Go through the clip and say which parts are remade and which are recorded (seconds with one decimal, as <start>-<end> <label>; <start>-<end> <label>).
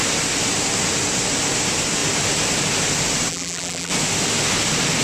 0.0-3.3 recorded; 3.3-3.9 remade; 3.9-5.0 recorded